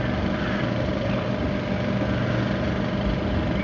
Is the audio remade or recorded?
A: recorded